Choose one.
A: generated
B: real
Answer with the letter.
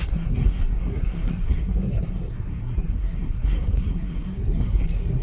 A